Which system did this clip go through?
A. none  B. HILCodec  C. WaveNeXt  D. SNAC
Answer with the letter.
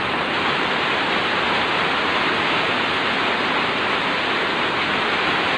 A